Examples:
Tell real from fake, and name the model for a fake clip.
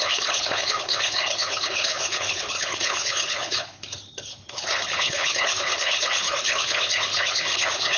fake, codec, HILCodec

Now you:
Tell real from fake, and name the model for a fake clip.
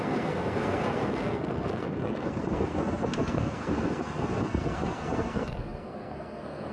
fake, codec, SNAC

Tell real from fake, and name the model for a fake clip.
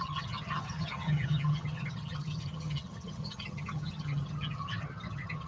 fake, vocoder, HiFi-GAN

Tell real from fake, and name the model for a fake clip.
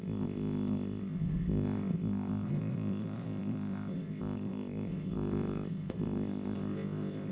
fake, codec, ZipCodec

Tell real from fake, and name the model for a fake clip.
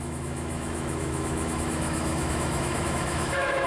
fake, autoencoder, DAC-VAE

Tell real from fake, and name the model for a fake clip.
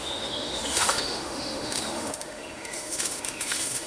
fake, autoencoder, DAC-VAE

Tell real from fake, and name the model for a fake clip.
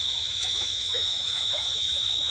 fake, autoencoder, DAC-VAE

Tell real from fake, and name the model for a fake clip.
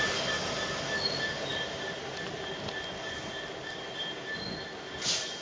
real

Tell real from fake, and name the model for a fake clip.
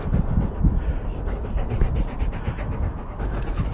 real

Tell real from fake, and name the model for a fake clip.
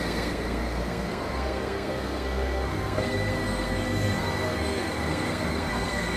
fake, codec, SNAC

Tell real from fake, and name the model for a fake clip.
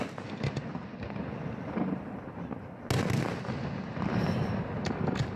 real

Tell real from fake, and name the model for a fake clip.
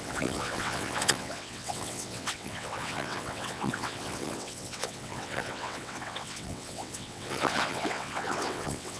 fake, vocoder, WaveNeXt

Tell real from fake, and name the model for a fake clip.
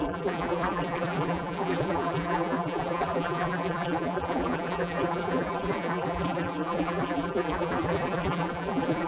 fake, vocoder, BigVGAN v2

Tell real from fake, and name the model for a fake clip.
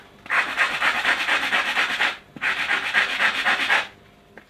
real